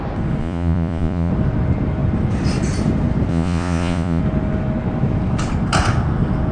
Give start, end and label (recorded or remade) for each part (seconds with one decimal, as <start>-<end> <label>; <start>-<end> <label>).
0.0-0.4 recorded; 0.4-1.3 remade; 1.3-3.3 recorded; 3.3-4.2 remade; 4.2-6.5 recorded